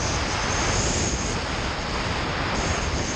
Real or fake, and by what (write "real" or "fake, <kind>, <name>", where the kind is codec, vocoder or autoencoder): real